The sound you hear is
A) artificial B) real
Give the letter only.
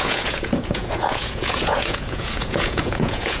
A